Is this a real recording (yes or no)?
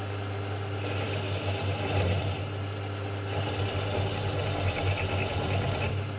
yes